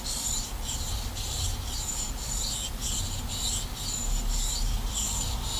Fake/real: real